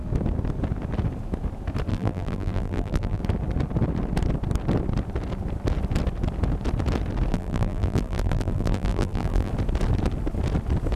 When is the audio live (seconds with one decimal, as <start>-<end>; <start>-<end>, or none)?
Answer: 0.0-1.9; 3.2-7.3; 9.5-11.0